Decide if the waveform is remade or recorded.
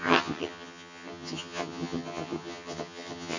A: remade